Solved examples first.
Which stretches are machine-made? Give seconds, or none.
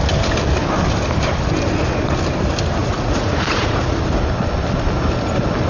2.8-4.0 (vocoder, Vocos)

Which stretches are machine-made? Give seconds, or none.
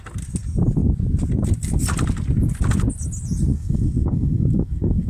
3.5-5.1 (codec, SNAC)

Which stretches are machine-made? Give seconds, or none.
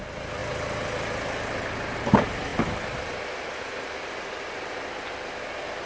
none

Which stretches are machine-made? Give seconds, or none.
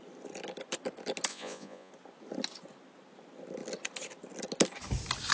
1.3-1.9 (vocoder, Vocos)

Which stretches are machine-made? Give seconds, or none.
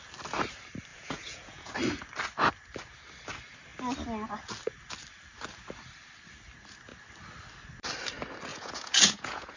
0.9-1.7 (vocoder, Vocos); 8.5-9.6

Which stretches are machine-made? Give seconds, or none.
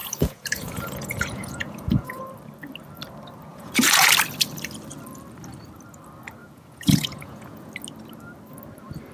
0.0-2.2 (vocoder, Vocos); 3.5-4.1; 6.4-7.7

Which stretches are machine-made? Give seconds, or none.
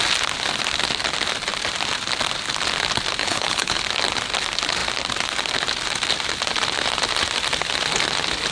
3.2-3.8 (codec, HILCodec)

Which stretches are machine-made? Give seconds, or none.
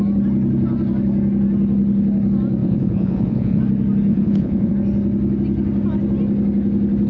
2.6-3.6 (vocoder, Vocos); 4.1-4.7